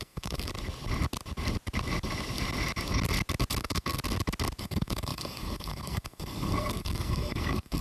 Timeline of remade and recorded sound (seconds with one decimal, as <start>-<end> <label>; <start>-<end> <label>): 0.0-0.5 remade; 0.5-3.6 recorded; 3.6-4.0 remade; 4.0-4.6 recorded; 4.6-7.8 remade